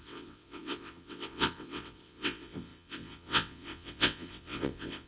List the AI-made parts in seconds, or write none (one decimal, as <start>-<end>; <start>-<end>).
0.0-5.1